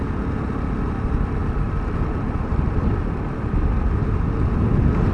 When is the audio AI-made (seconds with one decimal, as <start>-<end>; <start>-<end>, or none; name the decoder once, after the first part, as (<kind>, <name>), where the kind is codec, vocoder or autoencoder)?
none

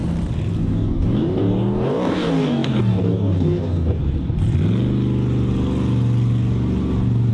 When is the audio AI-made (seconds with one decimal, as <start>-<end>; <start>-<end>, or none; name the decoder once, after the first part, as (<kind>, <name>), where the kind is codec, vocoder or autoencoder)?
0.6-4.0 (codec, DAC)

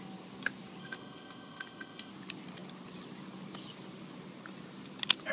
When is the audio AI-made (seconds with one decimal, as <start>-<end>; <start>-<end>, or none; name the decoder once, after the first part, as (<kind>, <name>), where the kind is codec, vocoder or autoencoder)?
0.8-2.1 (codec, ZipCodec)

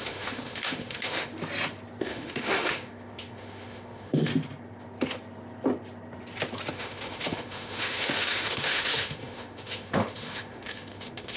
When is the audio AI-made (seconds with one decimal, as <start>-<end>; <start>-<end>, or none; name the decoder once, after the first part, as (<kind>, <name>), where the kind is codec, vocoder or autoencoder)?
0.0-1.3 (autoencoder, DAC-VAE); 2.0-4.3; 6.7-11.4

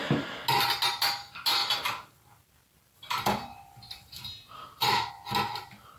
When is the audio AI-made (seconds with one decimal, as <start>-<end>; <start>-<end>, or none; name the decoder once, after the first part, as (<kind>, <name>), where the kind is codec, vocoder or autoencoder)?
1.6-5.1 (vocoder, BigVGAN v2)

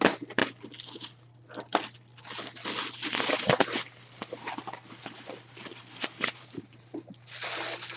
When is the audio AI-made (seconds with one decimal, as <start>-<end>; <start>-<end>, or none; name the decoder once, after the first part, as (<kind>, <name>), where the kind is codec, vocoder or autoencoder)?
5.7-7.0 (vocoder, BigVGAN v2)